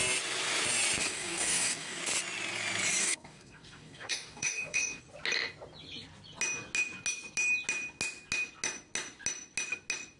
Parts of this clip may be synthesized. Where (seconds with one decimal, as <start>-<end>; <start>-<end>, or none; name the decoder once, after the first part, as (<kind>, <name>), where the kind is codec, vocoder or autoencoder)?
1.0-2.0 (codec, DAC); 3.0-5.0